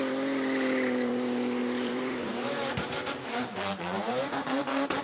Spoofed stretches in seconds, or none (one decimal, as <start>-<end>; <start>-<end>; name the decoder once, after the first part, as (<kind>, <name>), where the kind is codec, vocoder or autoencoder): 1.6-4.6 (vocoder, BigVGAN v2)